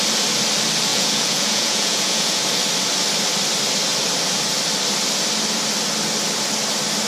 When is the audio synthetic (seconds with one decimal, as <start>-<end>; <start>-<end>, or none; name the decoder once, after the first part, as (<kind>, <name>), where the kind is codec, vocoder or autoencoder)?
0.9-2.4 (vocoder, Vocos)